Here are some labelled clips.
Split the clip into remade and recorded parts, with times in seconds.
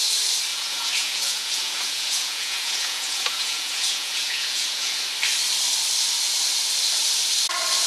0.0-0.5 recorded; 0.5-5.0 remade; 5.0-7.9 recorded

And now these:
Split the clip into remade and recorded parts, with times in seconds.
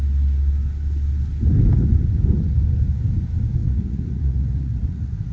0.0-3.6 recorded; 3.6-5.3 remade